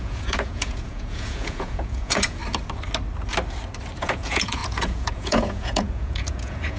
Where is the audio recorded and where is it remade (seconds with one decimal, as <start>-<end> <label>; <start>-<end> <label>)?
0.0-2.4 remade; 2.4-4.0 recorded; 4.0-6.8 remade